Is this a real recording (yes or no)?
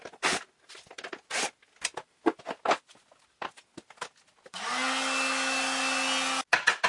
yes